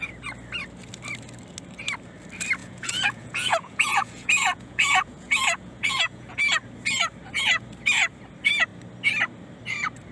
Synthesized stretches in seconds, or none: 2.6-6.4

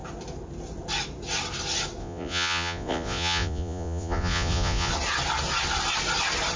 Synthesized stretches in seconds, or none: 2.0-4.9

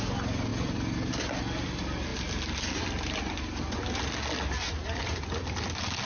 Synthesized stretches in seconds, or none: none

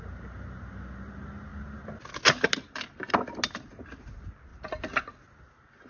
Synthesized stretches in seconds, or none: none

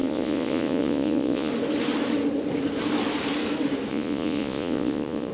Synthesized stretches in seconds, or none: 0.0-1.5; 3.9-5.3

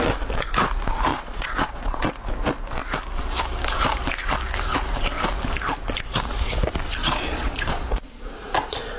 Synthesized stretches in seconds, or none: 1.1-2.1; 7.0-8.3